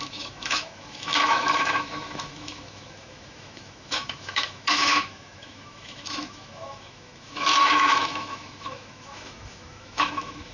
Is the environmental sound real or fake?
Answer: fake